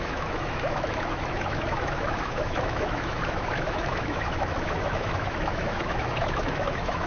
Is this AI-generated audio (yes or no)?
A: yes